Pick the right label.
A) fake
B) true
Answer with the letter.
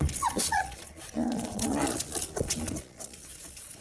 A